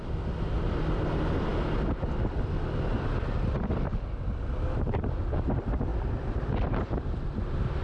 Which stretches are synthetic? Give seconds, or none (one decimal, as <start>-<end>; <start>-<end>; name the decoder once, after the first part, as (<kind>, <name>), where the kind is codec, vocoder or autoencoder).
none